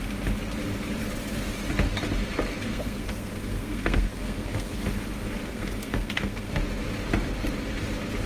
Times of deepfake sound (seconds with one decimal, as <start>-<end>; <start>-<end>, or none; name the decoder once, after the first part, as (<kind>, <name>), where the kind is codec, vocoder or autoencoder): 2.7-4.8 (codec, SNAC); 5.5-6.6